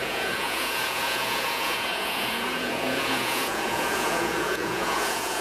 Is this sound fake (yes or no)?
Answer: yes